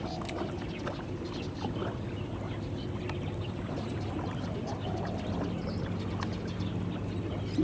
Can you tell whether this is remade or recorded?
recorded